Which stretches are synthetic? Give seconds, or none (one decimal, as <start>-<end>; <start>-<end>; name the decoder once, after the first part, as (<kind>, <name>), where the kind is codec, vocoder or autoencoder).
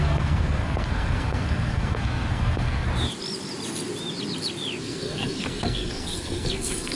0.0-2.9 (codec, SNAC); 4.8-7.0